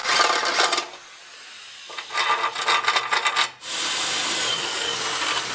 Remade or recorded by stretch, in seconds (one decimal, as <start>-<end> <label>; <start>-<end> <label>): 0.0-4.5 recorded; 4.5-5.0 remade; 5.0-5.5 recorded